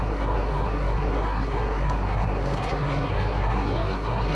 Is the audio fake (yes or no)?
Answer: yes